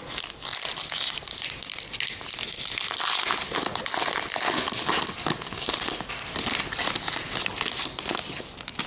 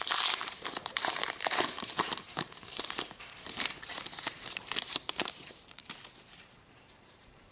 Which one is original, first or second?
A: first